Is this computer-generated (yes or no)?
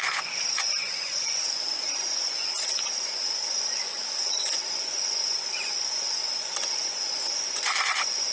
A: yes